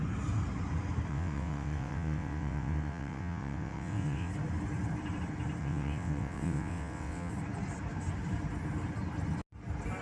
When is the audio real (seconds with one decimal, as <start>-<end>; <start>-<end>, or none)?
0.0-1.1; 4.3-5.6; 7.3-10.0